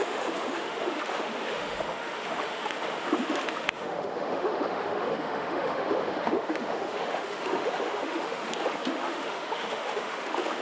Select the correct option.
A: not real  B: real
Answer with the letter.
A